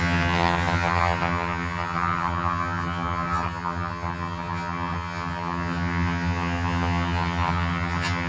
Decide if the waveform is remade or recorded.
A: remade